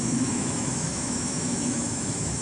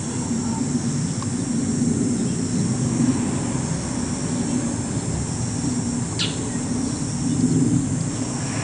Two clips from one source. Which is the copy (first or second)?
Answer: first